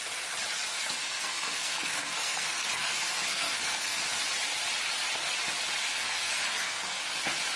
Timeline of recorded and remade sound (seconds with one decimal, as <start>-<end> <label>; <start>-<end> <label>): 0.0-0.7 recorded; 0.7-4.0 remade; 4.0-5.9 recorded; 5.9-7.0 remade; 7.0-7.6 recorded